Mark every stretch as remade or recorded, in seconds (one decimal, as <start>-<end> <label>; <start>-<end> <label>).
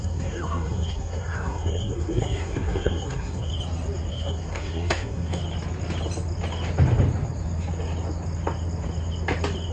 0.0-3.5 remade; 3.5-4.1 recorded; 4.1-5.4 remade; 5.4-9.7 recorded